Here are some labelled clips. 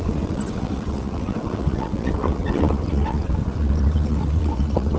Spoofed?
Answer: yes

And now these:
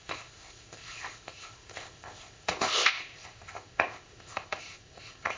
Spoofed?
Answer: yes